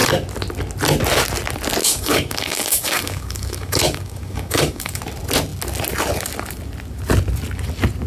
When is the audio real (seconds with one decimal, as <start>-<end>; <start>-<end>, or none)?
0.0-1.8; 5.0-8.1